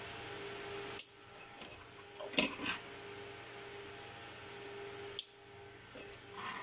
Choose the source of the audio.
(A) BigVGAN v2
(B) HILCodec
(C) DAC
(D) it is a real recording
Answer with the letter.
D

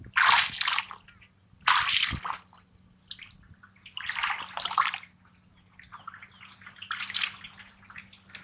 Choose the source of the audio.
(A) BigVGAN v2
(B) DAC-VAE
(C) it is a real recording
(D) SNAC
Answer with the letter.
C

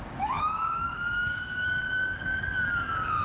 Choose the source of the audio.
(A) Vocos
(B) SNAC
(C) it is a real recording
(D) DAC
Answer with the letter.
D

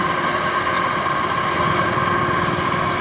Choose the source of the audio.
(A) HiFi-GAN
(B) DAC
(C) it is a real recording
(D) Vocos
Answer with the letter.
C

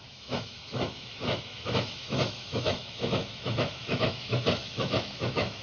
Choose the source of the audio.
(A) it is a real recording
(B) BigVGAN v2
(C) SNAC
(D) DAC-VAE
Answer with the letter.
D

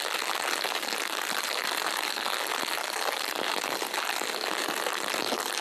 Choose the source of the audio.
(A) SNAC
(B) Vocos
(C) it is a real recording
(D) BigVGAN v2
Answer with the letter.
C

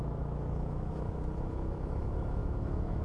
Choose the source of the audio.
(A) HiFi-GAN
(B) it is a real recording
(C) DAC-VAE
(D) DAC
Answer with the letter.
C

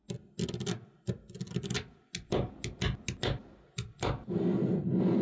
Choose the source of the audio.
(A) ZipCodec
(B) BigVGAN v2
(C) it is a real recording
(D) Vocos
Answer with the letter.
C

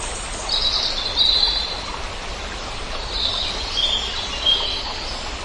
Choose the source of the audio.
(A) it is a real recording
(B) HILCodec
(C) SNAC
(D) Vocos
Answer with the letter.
A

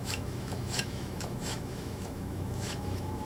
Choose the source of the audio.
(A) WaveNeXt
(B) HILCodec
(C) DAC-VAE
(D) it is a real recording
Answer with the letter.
C